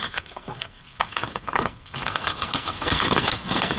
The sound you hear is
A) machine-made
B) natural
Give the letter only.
A